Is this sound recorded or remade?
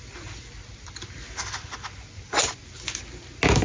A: recorded